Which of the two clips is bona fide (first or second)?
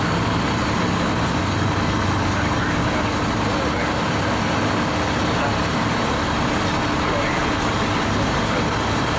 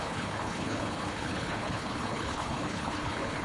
first